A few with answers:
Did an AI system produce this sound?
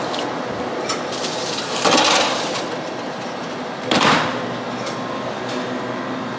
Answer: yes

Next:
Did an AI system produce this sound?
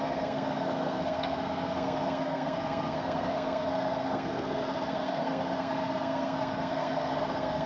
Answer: yes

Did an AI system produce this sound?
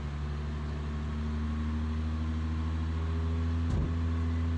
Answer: no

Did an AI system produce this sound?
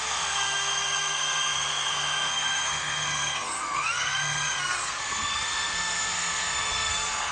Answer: yes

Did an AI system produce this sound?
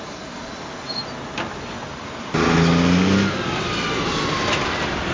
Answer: no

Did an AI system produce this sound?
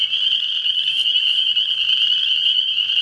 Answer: no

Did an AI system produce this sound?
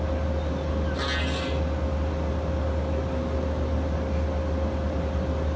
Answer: no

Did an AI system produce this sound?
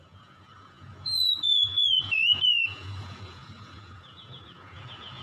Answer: yes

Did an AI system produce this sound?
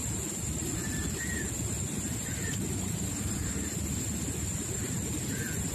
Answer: no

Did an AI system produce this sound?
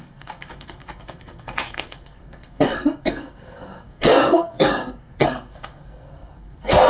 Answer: yes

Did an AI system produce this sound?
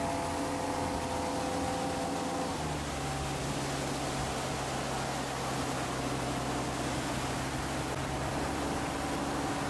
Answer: no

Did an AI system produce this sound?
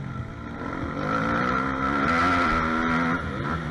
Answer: no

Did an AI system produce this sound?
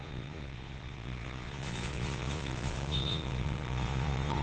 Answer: yes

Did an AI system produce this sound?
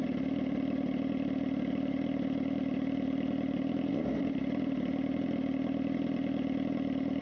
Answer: no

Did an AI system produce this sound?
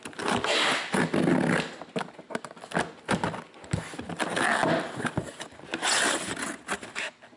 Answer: no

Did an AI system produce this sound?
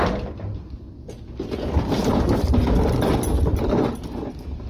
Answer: no